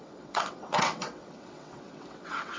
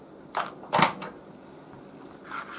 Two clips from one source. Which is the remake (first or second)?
first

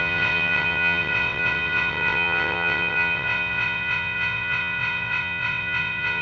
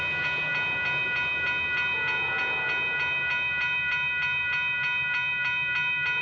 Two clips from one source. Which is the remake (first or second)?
first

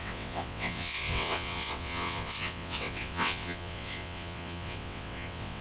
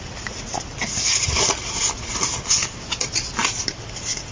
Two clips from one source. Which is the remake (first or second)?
first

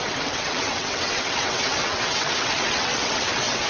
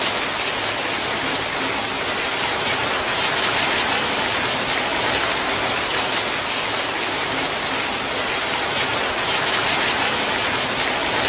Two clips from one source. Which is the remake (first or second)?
first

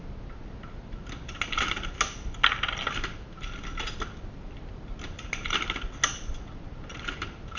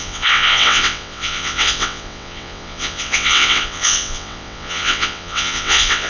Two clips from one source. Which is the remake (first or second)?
second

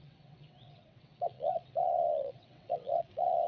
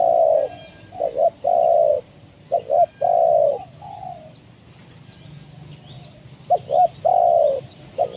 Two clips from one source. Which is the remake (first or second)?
first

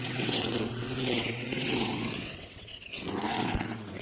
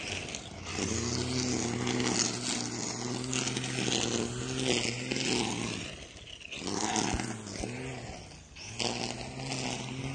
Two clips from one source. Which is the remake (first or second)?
first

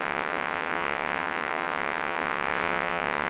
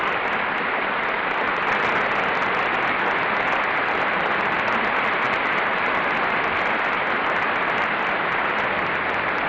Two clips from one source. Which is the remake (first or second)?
first